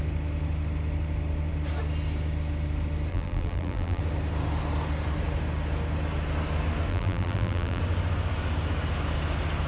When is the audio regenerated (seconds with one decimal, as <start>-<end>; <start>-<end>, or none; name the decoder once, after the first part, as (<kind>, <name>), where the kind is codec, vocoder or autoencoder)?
3.1-4.0 (vocoder, BigVGAN v2); 6.9-7.8